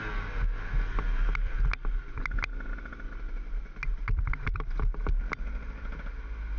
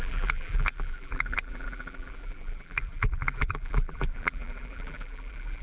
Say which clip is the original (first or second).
first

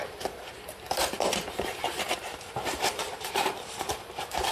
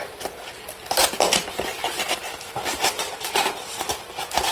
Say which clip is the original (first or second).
second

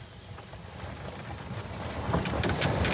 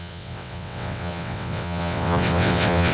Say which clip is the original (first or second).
first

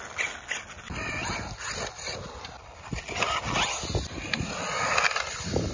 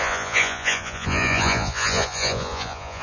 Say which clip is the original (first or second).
first